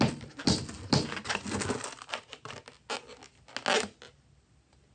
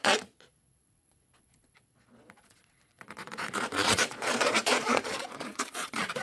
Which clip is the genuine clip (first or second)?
first